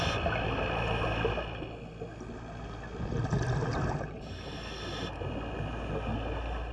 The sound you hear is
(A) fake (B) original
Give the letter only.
B